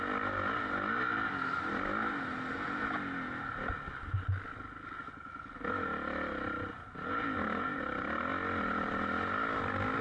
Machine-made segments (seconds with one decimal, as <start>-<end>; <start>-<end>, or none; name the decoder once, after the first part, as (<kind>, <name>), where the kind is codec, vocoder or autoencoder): none

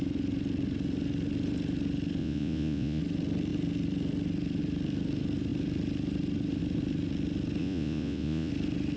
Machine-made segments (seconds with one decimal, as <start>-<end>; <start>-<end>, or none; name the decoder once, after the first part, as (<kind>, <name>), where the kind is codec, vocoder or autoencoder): 2.2-3.0 (vocoder, Vocos); 7.6-8.5

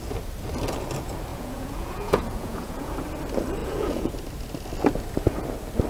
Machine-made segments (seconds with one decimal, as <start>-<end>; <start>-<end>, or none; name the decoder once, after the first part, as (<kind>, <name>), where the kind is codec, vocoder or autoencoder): 1.3-2.9 (vocoder, Vocos); 3.6-4.1

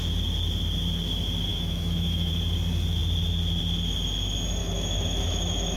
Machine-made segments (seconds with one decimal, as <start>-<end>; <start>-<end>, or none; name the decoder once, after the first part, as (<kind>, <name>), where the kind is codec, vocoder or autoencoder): 1.5-2.3 (autoencoder, DAC-VAE); 4.6-5.8

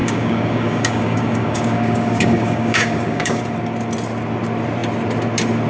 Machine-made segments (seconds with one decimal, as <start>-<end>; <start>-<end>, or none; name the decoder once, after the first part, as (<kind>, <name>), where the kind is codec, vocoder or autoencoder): 0.0-3.4 (codec, DAC)

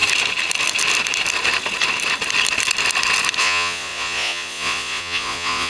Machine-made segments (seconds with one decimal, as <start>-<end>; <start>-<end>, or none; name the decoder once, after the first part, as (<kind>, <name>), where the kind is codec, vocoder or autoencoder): 3.4-5.7 (vocoder, Vocos)

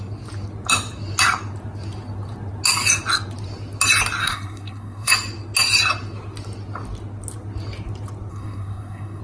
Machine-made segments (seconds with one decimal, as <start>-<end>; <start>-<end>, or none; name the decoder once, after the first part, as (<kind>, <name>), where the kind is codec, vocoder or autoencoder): 4.2-5.1 (codec, SNAC); 8.3-9.2

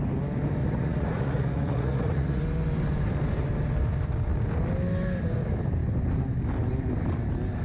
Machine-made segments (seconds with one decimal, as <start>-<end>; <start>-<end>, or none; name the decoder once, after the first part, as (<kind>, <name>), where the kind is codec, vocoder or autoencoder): 0.6-2.4 (vocoder, Vocos)